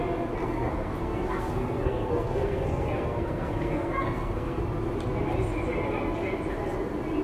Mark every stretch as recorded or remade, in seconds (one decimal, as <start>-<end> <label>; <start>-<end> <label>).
0.0-0.4 recorded; 0.4-4.6 remade; 4.6-7.2 recorded